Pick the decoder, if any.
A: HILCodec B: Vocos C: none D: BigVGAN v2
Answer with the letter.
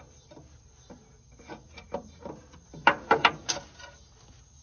C